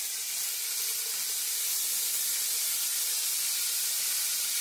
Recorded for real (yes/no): yes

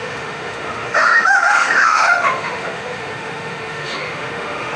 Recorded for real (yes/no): no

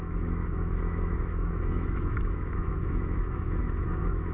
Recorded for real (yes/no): no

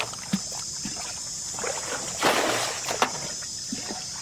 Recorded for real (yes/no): yes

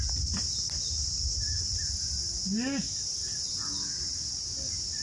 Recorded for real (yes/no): yes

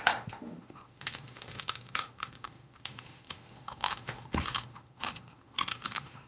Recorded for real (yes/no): no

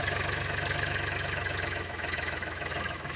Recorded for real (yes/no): no